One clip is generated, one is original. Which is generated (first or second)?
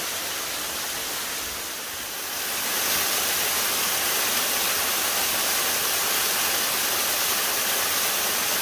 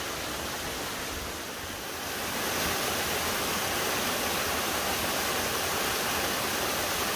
second